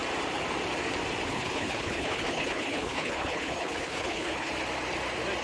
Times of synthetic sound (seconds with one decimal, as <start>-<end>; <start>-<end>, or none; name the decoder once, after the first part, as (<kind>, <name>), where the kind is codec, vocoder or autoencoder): 1.3-4.5 (codec, HILCodec)